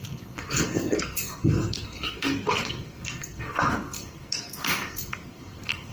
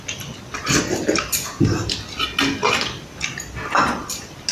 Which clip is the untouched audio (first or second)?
second